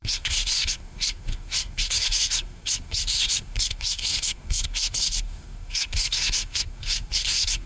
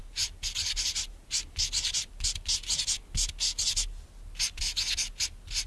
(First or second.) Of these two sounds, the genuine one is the second